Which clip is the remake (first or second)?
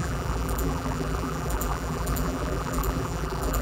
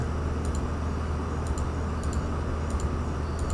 first